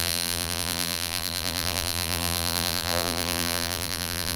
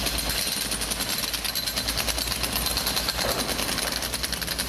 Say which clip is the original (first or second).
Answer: second